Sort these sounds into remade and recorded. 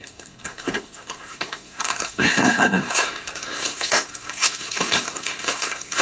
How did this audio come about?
remade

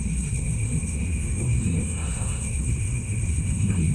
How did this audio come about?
remade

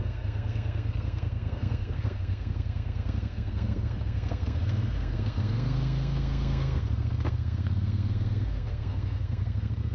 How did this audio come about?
remade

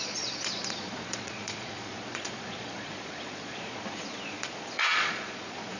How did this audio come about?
remade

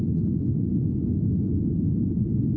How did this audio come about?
recorded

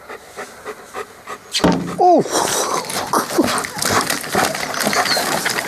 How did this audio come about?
recorded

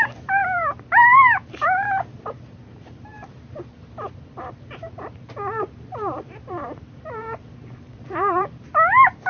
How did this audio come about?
remade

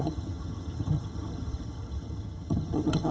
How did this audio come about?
remade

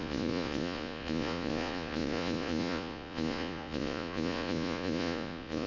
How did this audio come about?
remade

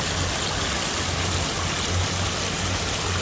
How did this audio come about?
recorded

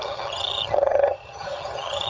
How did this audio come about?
remade